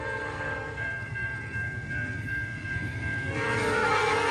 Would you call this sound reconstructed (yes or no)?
yes